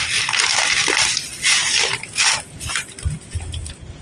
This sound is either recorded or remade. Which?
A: recorded